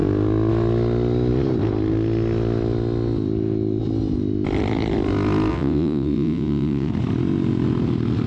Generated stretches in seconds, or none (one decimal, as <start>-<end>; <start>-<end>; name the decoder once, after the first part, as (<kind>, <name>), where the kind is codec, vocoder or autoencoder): 5.5-6.9 (vocoder, WaveNeXt)